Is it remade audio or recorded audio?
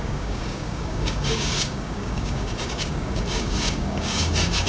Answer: remade